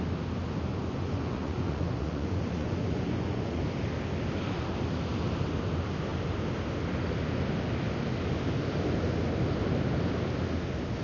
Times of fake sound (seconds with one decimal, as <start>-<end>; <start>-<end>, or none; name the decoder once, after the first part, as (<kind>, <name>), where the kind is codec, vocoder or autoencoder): 0.7-3.6 (vocoder, Vocos)